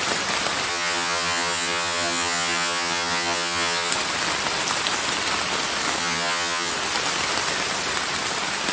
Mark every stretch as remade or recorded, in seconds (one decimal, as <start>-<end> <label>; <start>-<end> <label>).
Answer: 0.0-0.7 recorded; 0.7-3.9 remade; 3.9-6.0 recorded; 6.0-6.7 remade; 6.7-8.7 recorded